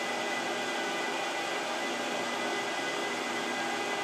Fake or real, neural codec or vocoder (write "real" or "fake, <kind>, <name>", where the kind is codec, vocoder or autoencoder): real